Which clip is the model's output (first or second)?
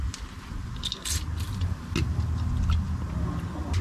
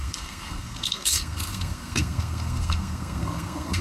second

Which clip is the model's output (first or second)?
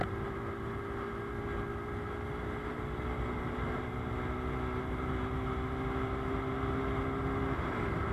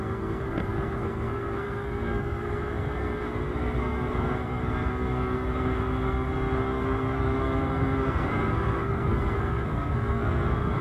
second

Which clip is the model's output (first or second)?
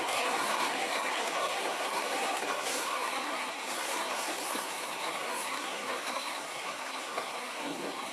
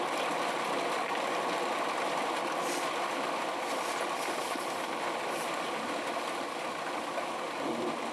first